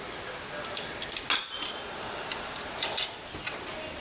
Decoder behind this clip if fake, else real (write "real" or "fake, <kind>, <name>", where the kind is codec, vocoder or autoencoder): real